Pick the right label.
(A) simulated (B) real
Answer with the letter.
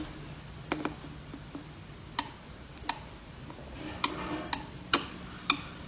B